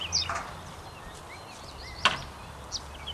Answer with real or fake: real